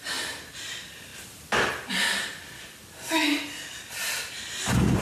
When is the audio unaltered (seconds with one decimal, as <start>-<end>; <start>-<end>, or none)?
0.0-5.0